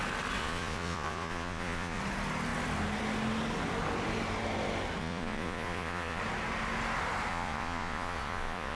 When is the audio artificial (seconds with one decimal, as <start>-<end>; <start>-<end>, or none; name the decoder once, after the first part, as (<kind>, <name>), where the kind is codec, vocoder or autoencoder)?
0.4-2.0 (vocoder, Vocos); 5.0-6.2; 7.3-8.8